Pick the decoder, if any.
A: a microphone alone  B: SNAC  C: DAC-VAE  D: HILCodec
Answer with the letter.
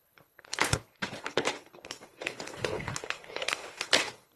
D